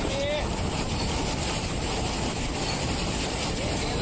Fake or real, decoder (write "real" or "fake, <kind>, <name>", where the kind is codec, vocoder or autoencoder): real